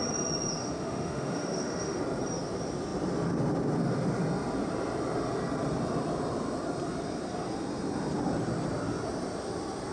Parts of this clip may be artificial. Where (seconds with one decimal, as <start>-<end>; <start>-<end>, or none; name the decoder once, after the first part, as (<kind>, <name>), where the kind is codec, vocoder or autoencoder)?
0.6-2.0 (autoencoder, DAC-VAE)